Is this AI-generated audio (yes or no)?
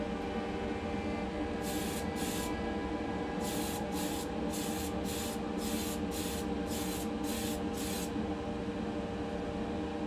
no